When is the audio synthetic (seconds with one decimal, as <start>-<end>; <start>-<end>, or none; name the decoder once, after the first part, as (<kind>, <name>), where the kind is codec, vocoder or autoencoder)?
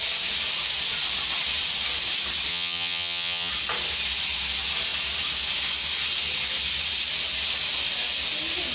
2.5-3.5 (vocoder, HiFi-GAN)